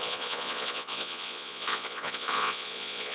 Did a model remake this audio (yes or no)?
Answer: yes